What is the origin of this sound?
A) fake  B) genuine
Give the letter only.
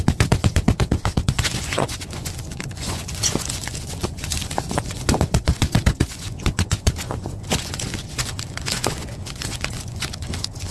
A